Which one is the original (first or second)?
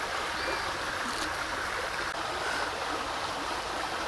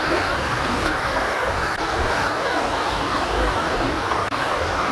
first